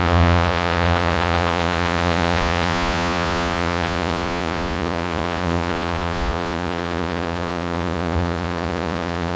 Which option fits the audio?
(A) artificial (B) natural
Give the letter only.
A